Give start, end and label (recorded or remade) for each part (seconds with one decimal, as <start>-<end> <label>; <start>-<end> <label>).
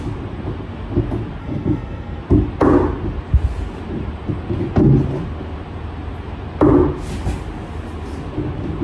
0.0-1.4 recorded; 1.4-2.2 remade; 2.2-8.8 recorded